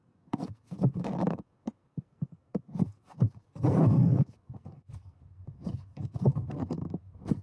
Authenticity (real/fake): fake